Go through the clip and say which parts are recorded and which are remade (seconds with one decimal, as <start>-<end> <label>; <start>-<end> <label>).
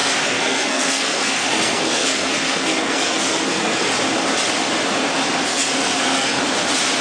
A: 0.0-3.9 remade; 3.9-5.5 recorded; 5.5-6.4 remade; 6.4-7.0 recorded